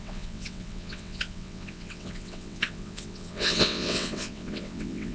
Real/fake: fake